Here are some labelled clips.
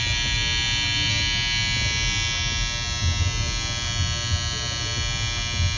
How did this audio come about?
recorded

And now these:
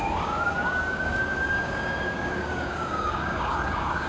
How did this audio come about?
remade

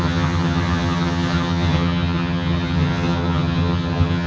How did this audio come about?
remade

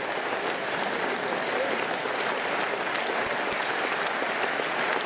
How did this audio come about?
recorded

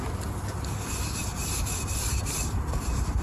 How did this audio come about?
remade